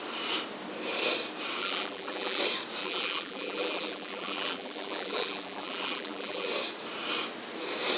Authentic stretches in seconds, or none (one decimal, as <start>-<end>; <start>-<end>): 0.0-1.6; 2.4-2.8; 6.5-8.0